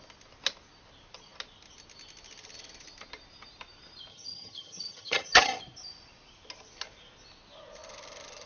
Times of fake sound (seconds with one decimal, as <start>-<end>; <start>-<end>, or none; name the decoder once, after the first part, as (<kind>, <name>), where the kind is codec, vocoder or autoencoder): 4.1-5.6 (vocoder, HiFi-GAN)